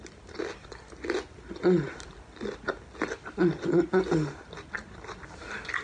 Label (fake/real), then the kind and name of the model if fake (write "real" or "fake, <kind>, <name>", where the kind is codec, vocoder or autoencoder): real